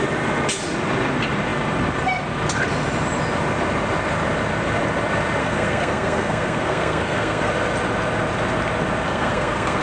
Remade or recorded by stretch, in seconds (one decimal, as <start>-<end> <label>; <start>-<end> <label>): 0.0-5.4 recorded; 5.4-7.5 remade; 7.5-9.1 recorded; 9.1-9.8 remade